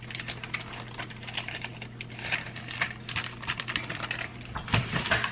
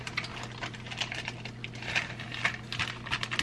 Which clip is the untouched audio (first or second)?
second